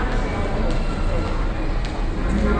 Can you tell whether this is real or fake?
real